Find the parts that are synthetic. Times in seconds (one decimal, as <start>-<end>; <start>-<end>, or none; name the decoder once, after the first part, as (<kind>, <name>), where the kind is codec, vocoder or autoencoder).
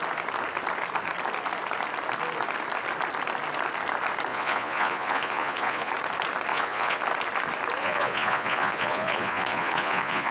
4.3-5.9 (vocoder, Vocos); 6.5-7.0; 7.8-10.3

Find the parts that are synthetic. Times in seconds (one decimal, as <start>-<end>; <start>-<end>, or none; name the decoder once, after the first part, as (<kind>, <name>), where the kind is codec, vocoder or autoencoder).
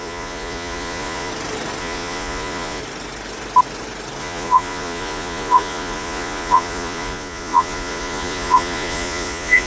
0.0-1.3 (vocoder, Vocos); 1.8-2.8; 4.2-9.7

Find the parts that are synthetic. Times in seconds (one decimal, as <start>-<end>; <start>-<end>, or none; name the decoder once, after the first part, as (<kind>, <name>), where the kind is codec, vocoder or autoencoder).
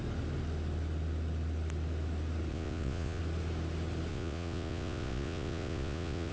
2.5-3.2 (vocoder, Vocos); 4.1-6.3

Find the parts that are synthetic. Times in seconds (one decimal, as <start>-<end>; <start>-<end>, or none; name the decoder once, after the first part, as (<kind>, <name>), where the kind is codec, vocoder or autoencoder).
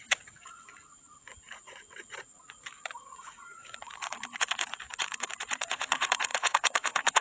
0.0-7.2 (vocoder, Vocos)